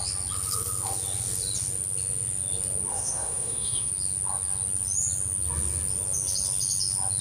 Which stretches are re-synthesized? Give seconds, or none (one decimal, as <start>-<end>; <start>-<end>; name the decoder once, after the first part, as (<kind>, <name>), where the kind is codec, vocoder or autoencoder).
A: 2.9-3.9 (autoencoder, DAC-VAE)